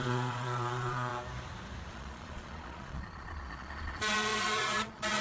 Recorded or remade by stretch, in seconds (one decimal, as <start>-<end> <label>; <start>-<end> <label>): 0.0-1.1 remade; 1.1-1.9 recorded; 1.9-5.2 remade